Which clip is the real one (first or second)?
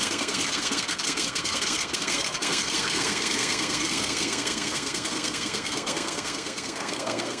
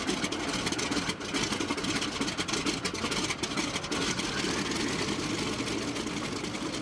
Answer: second